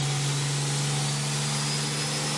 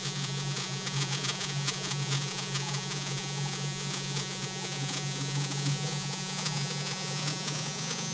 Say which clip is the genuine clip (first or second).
first